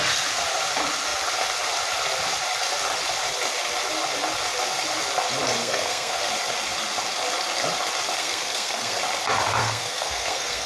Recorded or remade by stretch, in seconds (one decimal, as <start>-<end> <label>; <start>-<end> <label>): 0.0-5.6 recorded; 5.6-6.2 remade; 6.2-8.2 recorded; 8.2-9.0 remade; 9.0-9.6 recorded; 9.6-10.7 remade